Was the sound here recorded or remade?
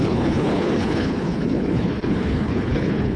remade